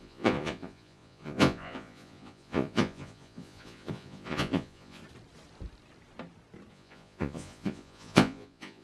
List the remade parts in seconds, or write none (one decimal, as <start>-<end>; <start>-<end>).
0.0-5.0; 6.7-8.8